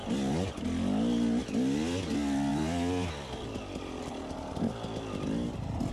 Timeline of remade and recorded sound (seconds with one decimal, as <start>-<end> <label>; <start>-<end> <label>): 0.0-2.5 recorded; 2.5-3.8 remade; 3.8-5.9 recorded

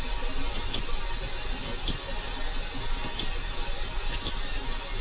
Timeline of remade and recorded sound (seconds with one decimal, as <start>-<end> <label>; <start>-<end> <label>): 0.0-5.0 recorded

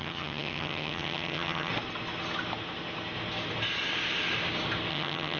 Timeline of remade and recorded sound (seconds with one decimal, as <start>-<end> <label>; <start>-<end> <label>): 0.0-1.7 remade; 1.7-4.9 recorded; 4.9-5.4 remade

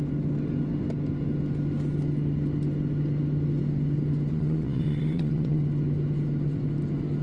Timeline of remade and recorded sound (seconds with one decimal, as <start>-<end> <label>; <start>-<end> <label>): 0.0-4.3 recorded; 4.3-5.6 remade; 5.6-7.2 recorded